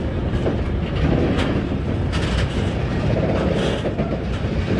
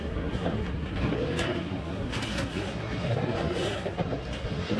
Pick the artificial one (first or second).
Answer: second